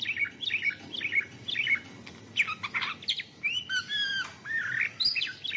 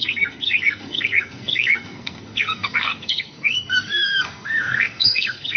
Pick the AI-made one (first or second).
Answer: second